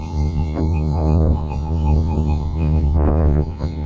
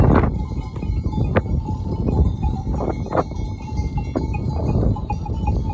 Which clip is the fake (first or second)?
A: first